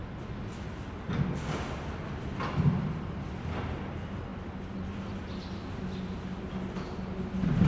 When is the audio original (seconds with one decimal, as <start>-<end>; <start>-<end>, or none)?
0.0-7.7